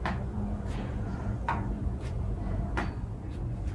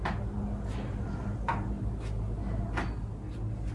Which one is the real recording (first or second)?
second